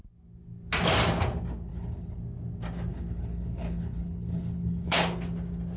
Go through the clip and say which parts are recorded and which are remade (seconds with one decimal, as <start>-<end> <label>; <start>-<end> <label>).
0.0-1.7 recorded; 1.7-2.2 remade; 2.2-2.9 recorded; 2.9-5.0 remade; 5.0-5.8 recorded